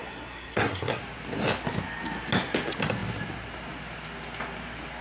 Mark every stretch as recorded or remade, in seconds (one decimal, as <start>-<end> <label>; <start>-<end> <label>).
0.0-1.0 remade; 1.0-5.0 recorded